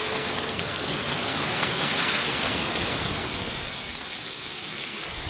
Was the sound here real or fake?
fake